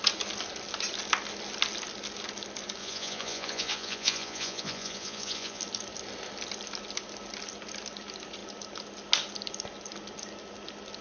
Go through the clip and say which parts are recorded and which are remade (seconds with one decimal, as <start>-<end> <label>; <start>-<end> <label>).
0.0-2.8 recorded; 2.8-5.6 remade; 5.6-11.0 recorded